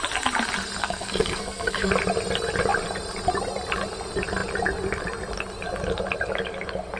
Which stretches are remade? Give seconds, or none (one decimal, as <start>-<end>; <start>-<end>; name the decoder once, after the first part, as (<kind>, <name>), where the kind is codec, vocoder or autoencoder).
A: 0.8-1.9 (codec, SNAC)